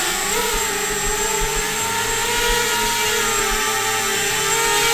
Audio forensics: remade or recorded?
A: recorded